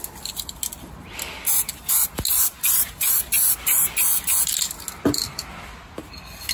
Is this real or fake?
real